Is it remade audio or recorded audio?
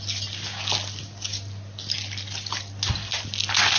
recorded